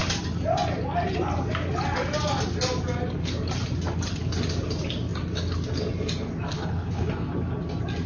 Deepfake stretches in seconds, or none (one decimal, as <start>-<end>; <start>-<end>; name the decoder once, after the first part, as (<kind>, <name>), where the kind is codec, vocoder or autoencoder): 6.5-7.1 (codec, HILCodec)